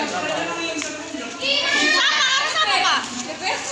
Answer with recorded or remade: remade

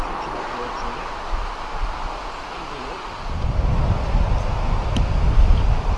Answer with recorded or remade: recorded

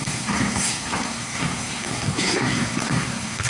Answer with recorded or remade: remade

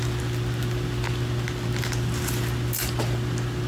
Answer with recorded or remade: recorded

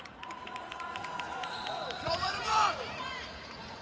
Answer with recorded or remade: remade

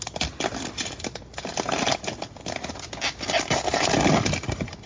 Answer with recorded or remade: recorded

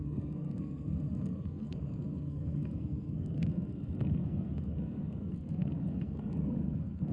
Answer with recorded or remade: remade